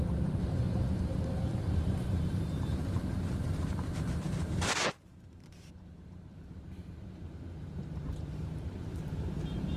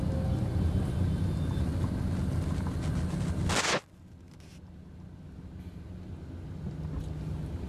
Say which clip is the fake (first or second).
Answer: first